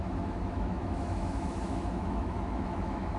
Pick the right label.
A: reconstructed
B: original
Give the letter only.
A